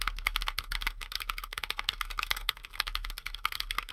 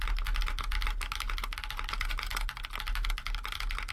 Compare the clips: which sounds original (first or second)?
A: second